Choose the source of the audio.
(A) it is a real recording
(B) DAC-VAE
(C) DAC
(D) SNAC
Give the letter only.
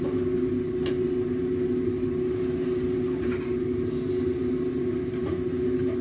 A